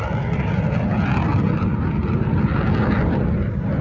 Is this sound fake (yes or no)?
no